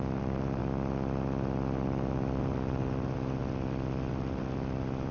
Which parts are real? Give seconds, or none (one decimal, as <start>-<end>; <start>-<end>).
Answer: 0.6-2.4; 3.4-4.1